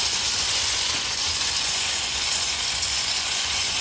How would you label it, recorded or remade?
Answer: remade